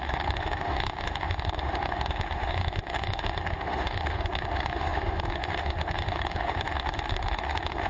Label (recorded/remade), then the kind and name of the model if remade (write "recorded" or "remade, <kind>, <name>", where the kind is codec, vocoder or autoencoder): remade, autoencoder, DAC-VAE